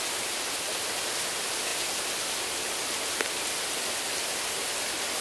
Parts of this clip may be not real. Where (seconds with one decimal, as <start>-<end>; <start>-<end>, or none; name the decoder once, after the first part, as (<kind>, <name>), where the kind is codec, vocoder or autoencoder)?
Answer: none